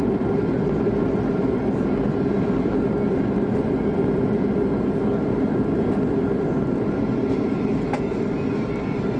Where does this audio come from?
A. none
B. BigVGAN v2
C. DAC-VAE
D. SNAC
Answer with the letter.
A